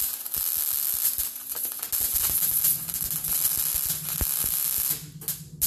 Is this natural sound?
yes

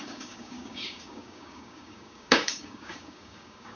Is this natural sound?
no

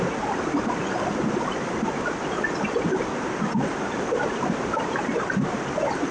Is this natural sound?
yes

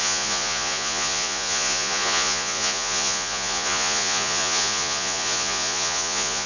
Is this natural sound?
no